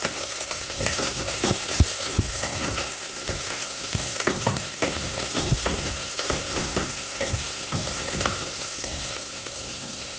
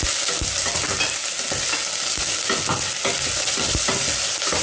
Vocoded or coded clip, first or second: first